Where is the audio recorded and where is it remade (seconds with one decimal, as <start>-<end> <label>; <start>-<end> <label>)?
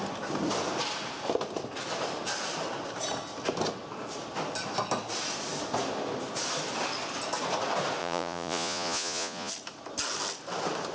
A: 0.0-8.0 recorded; 8.0-9.5 remade; 9.5-10.9 recorded